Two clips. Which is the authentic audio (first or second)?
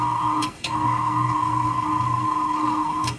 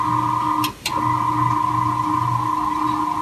second